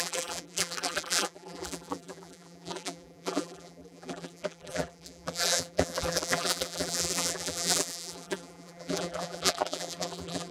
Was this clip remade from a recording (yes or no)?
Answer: yes